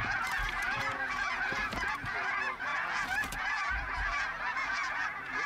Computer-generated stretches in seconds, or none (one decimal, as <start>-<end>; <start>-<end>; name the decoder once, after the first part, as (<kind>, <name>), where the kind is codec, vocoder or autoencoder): 0.0-5.5 (vocoder, Vocos)